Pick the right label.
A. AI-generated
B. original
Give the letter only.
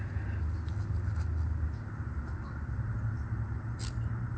B